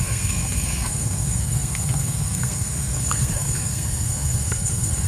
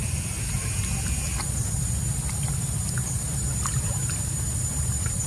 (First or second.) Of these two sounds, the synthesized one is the first